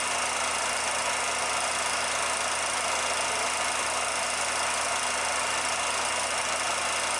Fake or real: real